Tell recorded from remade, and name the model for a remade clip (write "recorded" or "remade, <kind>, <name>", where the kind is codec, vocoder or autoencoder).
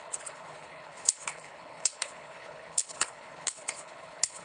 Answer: remade, codec, HILCodec